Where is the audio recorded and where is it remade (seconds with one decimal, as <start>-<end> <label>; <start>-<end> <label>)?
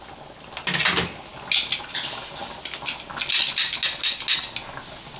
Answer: 0.0-5.2 recorded